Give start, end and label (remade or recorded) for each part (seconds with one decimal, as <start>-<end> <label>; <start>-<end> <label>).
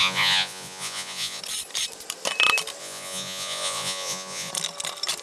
0.0-1.4 remade; 1.4-2.8 recorded; 2.8-4.5 remade; 4.5-5.2 recorded